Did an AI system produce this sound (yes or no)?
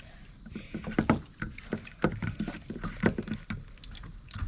no